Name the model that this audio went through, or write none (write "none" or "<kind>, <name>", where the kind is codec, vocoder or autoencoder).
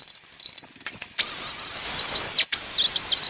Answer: none